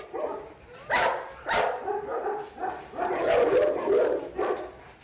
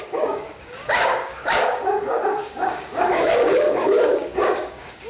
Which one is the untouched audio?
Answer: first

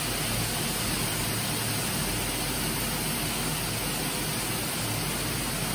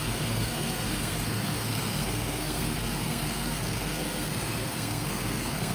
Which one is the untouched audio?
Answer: first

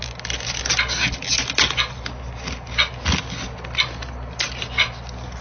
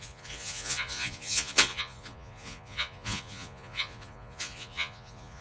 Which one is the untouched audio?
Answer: first